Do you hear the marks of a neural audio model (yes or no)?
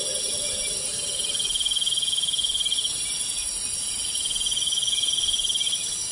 no